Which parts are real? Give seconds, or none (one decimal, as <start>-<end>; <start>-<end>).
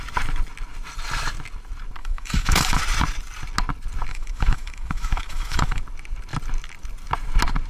0.0-2.0; 2.8-4.1; 5.8-7.7